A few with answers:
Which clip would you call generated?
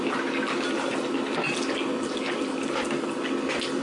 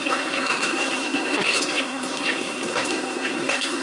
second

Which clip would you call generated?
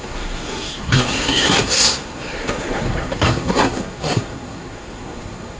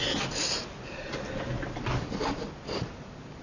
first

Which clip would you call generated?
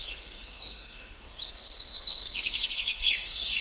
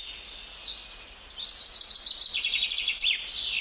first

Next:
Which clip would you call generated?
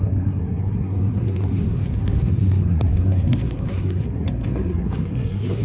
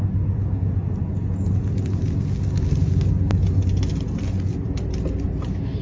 first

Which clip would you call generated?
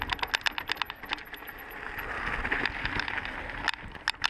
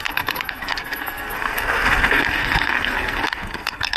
second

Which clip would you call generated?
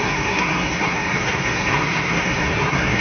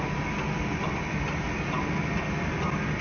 first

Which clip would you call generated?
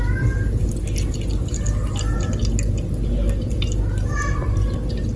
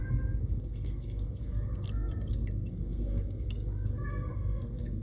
second